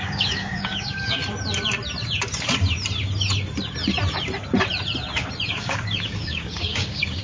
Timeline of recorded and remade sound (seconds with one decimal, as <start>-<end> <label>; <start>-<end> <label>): 0.0-1.2 remade; 1.2-5.5 recorded; 5.5-7.2 remade